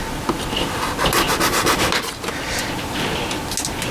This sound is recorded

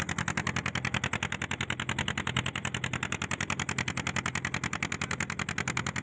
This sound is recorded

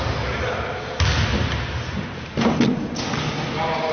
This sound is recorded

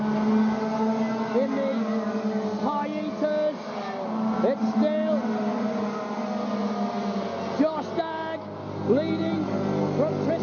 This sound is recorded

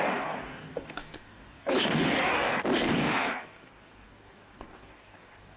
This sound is remade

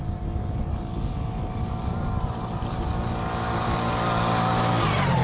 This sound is recorded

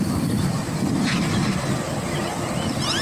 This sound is recorded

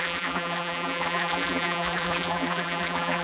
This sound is remade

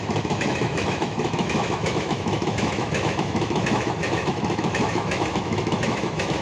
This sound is remade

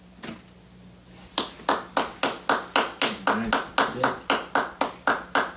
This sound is recorded